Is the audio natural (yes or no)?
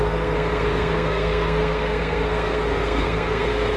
no